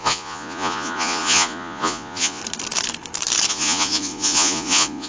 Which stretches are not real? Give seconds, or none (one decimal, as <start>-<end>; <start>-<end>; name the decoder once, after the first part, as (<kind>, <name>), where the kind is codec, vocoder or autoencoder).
0.0-2.4 (vocoder, Vocos); 3.5-5.1